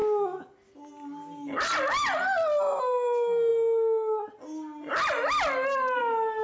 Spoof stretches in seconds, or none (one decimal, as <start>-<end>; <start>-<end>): none